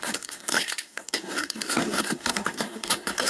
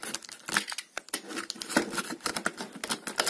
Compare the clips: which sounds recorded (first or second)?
second